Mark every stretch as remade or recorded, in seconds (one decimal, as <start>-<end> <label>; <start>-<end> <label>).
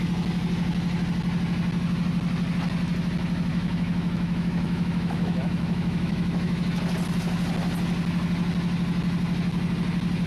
0.0-3.5 recorded; 3.5-6.6 remade; 6.6-10.3 recorded